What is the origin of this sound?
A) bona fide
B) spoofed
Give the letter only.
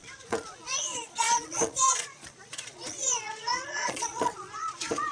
B